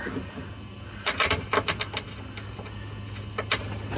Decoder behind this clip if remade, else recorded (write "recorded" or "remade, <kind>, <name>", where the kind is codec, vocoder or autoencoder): recorded